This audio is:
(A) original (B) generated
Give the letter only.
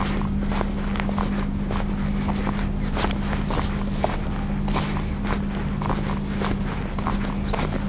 A